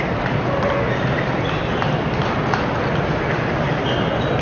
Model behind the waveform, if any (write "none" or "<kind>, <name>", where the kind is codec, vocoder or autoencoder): none